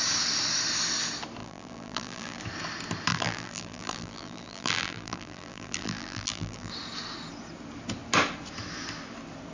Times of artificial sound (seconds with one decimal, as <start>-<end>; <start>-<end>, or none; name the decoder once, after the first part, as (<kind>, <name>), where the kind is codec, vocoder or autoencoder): 1.4-2.4 (vocoder, BigVGAN v2); 3.1-6.7